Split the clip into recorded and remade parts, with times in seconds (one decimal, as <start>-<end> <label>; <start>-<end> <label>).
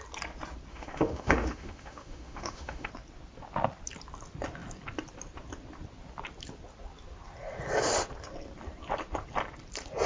0.0-0.7 recorded; 0.7-2.9 remade; 2.9-10.1 recorded